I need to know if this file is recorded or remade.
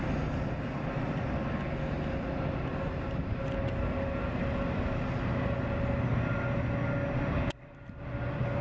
recorded